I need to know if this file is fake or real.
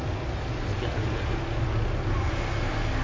real